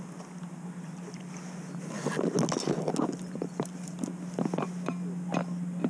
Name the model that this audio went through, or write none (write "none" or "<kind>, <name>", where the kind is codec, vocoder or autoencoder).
none